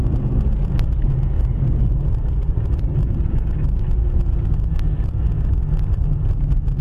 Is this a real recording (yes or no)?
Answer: yes